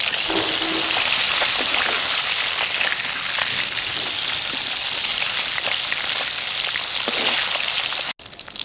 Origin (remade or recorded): recorded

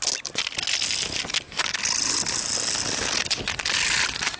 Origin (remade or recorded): recorded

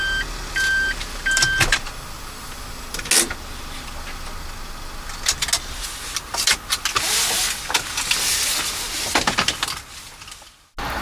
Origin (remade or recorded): recorded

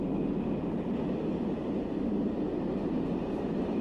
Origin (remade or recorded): recorded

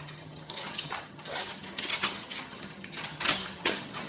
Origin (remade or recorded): remade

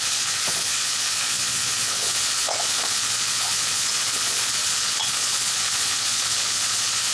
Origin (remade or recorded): remade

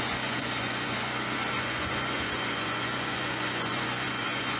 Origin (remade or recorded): remade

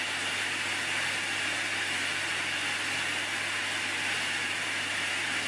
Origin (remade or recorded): recorded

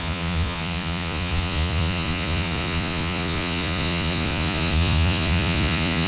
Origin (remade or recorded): remade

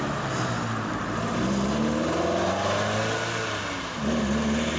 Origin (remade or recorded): recorded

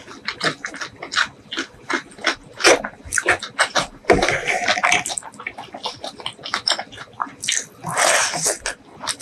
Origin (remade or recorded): recorded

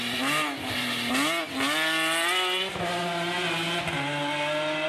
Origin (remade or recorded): recorded